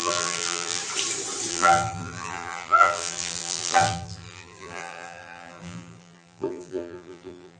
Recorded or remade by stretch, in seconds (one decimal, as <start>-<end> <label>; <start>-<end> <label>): 0.0-0.8 remade; 0.8-1.5 recorded; 1.5-7.6 remade

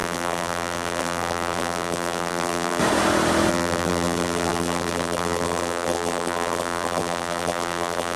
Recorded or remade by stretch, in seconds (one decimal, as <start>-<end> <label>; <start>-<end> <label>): 0.0-2.8 remade; 2.8-3.5 recorded; 3.5-8.2 remade

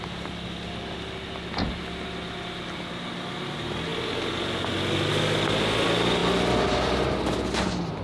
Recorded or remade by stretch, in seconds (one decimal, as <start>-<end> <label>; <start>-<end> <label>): 0.0-8.0 recorded

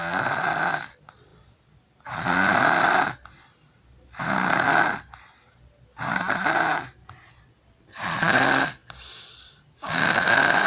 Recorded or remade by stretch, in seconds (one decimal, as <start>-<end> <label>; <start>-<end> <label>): 0.0-10.7 recorded

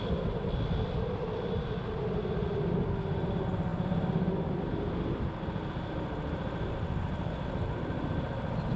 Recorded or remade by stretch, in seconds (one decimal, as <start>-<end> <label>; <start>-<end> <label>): 0.0-8.8 recorded

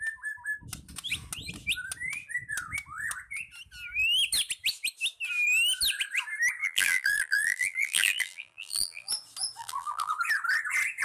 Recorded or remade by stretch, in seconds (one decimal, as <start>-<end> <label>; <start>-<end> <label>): 0.0-6.6 recorded; 6.6-9.1 remade; 9.1-9.6 recorded; 9.6-10.1 remade; 10.1-11.0 recorded